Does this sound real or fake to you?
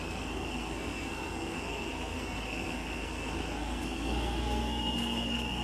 fake